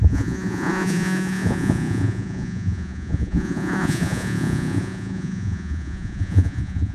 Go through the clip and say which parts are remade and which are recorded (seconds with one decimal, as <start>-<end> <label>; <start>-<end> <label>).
0.0-6.9 remade